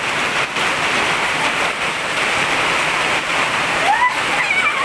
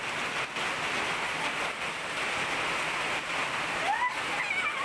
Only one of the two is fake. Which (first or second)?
first